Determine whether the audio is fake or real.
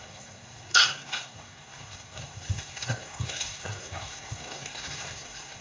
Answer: fake